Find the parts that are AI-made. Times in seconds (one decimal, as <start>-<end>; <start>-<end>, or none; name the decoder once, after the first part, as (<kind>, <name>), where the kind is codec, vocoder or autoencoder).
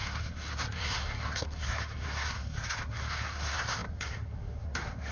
0.0-5.1 (codec, SNAC)